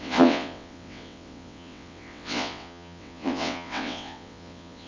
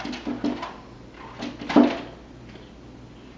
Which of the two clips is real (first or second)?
second